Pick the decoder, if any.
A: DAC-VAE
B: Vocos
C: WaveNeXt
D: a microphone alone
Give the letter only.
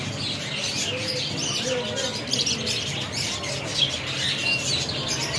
D